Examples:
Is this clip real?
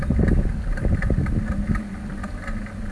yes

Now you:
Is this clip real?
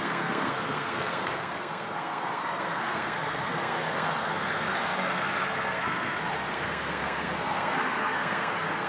no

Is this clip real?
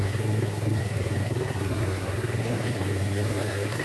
no